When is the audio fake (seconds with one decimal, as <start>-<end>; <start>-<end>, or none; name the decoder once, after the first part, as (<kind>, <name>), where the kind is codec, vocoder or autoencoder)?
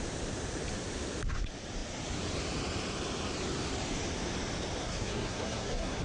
4.8-6.0 (codec, SNAC)